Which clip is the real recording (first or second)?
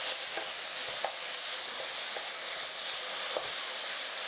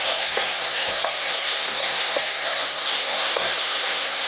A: first